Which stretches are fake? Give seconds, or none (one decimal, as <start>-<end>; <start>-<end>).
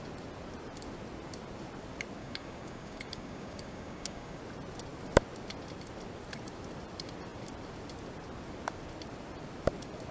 2.2-4.4